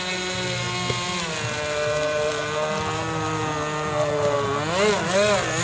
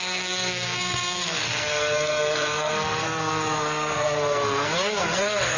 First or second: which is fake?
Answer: second